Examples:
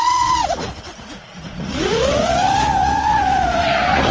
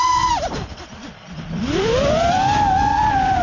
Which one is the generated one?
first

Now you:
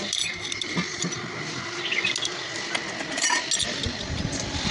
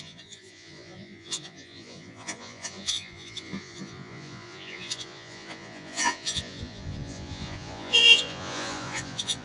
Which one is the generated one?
second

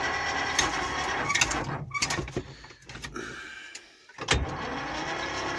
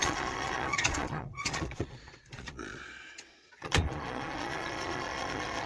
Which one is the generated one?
second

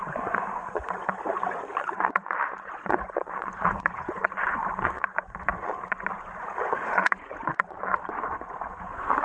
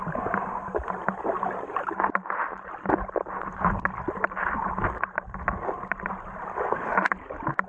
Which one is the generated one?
first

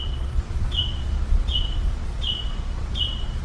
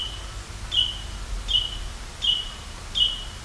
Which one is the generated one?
first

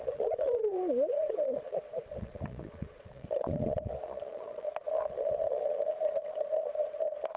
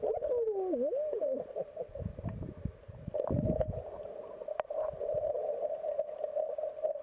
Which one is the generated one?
first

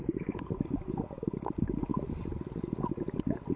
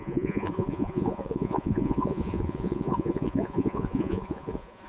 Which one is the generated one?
second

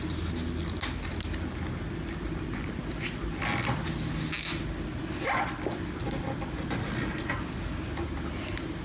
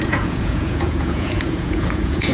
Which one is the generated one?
second